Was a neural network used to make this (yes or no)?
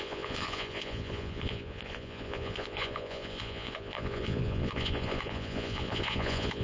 yes